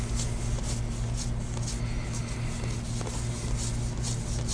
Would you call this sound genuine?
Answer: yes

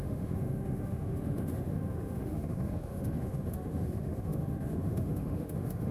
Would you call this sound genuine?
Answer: no